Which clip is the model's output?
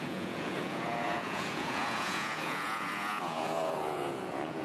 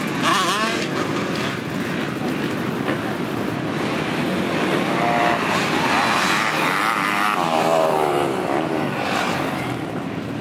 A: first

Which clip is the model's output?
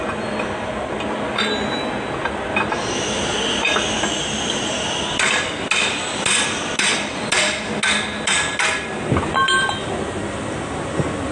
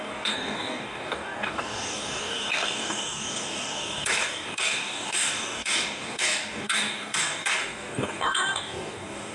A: second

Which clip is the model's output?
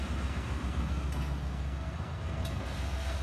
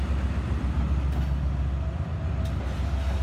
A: first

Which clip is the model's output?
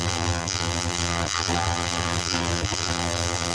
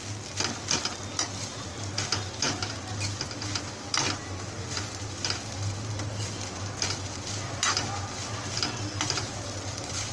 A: first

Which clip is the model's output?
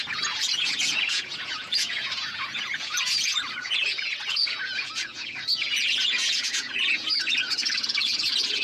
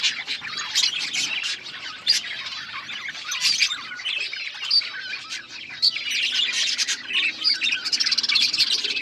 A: first